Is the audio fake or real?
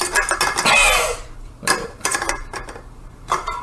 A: real